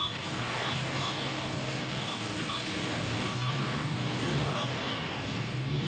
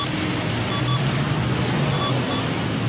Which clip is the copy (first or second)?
first